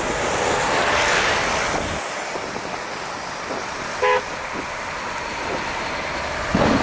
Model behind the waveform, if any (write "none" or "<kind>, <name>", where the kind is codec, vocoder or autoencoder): none